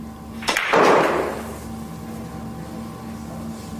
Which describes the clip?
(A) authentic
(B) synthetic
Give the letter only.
A